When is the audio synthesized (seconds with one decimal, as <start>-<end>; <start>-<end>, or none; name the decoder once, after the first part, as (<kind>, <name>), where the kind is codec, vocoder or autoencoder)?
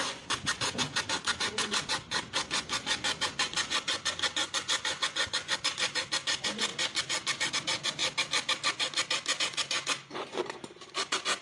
0.0-6.7 (vocoder, Vocos); 7.5-8.0; 9.4-11.4